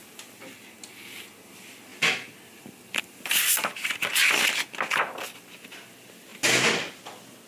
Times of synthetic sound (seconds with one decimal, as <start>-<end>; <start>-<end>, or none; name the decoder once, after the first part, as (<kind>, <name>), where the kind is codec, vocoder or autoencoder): 1.9-3.0 (vocoder, BigVGAN v2)

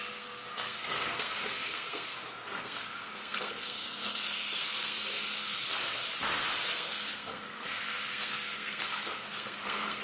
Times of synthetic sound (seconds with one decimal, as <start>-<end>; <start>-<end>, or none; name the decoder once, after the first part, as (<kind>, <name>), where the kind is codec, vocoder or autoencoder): 0.0-6.1 (codec, SNAC); 6.6-10.0

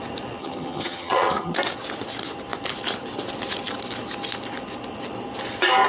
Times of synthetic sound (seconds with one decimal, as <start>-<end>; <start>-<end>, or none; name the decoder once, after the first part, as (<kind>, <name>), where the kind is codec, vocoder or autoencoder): 0.4-1.5 (vocoder, HiFi-GAN)